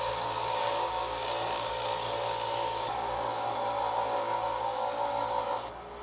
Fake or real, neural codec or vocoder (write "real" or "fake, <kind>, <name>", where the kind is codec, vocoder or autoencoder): fake, codec, DAC